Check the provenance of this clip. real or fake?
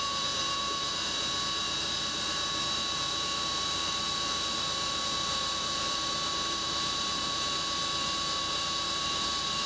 fake